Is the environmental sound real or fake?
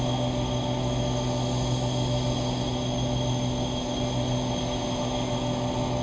real